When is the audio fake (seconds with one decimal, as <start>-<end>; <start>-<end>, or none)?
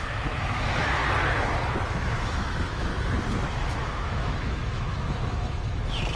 0.0-1.0; 1.9-2.9; 3.5-6.2